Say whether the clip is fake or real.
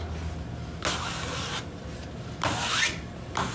real